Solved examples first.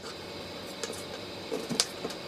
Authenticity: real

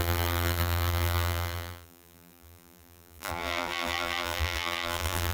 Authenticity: fake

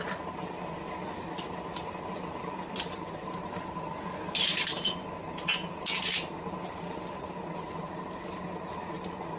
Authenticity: real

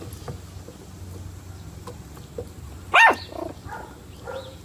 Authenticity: real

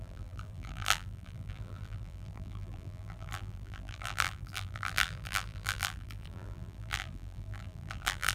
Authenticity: fake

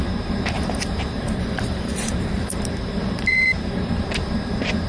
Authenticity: fake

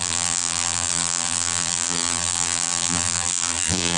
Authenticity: fake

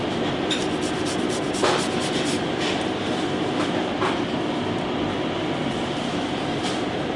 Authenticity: fake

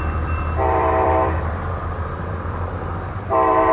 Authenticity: fake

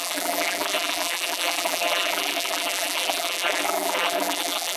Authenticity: fake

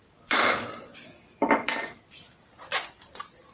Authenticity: fake